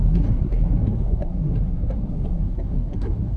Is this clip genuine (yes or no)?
no